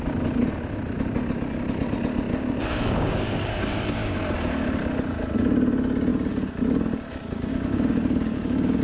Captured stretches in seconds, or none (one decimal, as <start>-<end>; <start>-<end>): 0.0-2.3; 4.2-7.5